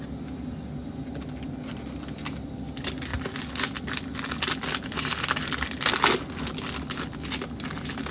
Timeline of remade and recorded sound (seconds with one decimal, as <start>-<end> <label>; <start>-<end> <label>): 0.0-8.1 recorded